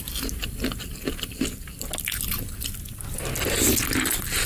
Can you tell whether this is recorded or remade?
recorded